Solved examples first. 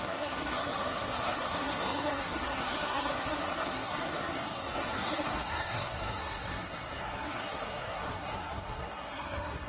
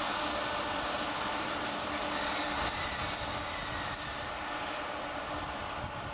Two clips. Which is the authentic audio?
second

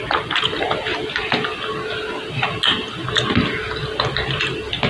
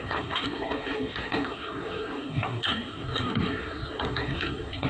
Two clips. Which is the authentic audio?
first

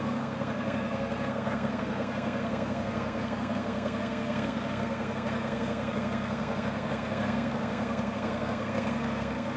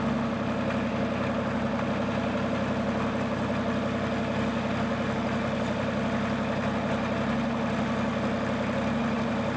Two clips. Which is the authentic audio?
second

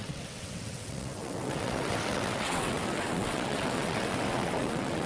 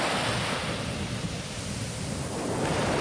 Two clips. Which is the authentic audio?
second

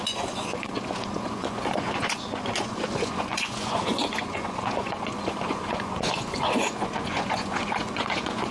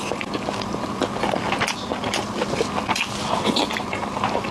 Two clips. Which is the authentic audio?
second